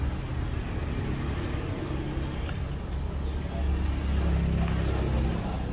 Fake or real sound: real